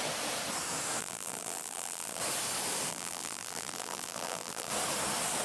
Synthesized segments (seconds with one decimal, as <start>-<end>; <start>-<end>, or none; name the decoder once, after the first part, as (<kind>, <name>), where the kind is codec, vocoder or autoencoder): 1.0-2.2 (vocoder, BigVGAN v2); 2.9-4.7